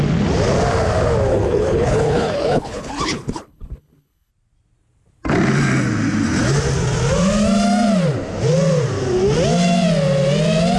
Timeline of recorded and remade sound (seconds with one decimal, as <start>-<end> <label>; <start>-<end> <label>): 0.0-1.3 recorded; 1.3-4.3 remade; 4.3-10.8 recorded